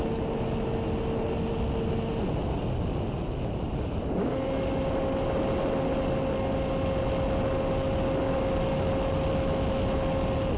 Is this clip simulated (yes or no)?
no